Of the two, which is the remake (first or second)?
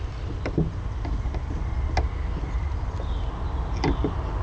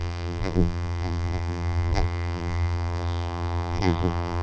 second